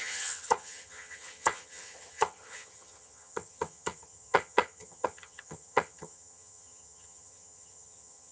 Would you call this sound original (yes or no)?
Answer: no